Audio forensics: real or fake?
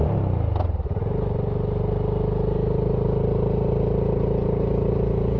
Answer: real